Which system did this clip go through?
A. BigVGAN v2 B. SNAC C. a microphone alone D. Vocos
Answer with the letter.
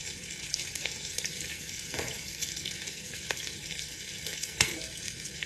B